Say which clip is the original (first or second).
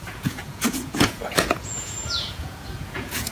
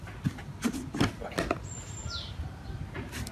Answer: second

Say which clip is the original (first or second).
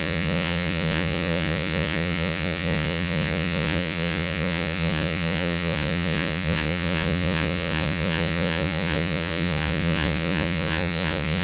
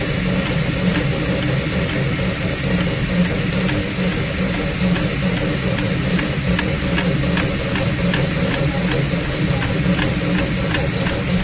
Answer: second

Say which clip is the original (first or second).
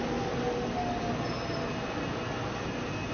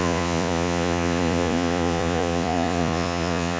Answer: first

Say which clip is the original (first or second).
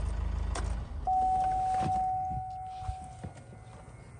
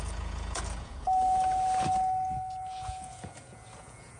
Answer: first